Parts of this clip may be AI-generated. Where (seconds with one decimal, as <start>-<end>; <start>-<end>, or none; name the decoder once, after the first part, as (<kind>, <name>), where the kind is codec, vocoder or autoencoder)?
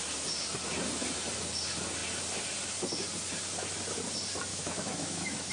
4.5-5.5 (autoencoder, DAC-VAE)